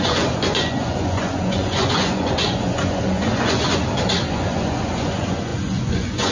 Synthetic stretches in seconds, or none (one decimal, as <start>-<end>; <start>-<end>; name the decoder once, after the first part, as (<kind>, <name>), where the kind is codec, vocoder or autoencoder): 0.0-3.8 (vocoder, Vocos); 4.3-6.3